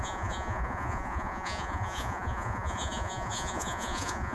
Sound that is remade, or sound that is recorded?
remade